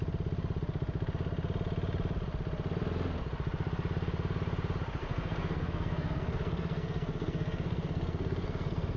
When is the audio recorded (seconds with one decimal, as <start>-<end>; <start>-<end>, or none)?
0.0-5.0